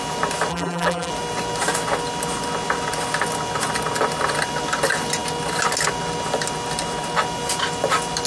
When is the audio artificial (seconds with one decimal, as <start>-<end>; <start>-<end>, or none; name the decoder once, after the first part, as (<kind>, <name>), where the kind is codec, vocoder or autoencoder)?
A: 0.5-1.1 (vocoder, BigVGAN v2)